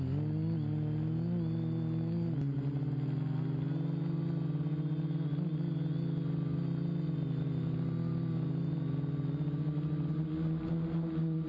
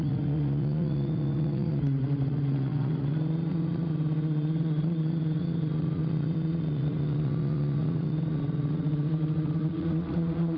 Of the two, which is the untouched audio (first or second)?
first